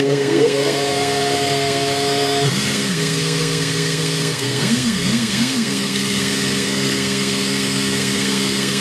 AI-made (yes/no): yes